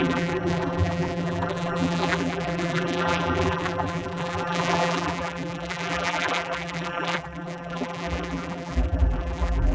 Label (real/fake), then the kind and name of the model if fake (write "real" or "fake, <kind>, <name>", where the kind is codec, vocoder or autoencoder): fake, vocoder, BigVGAN v2